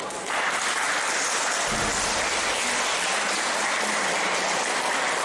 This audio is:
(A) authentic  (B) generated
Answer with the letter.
A